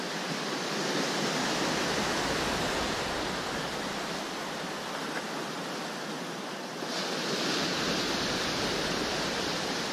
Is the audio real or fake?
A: real